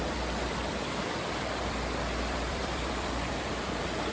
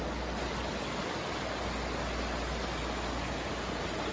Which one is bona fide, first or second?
second